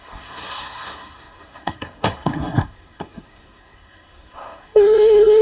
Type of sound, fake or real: fake